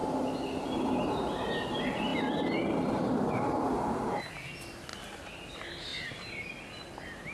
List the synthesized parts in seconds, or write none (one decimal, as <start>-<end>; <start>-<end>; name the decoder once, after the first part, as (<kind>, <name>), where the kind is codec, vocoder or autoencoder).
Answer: 0.0-1.1 (vocoder, BigVGAN v2); 4.9-5.5; 5.9-6.5